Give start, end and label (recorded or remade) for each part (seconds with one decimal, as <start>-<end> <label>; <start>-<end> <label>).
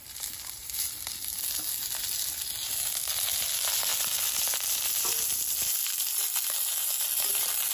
0.0-7.7 recorded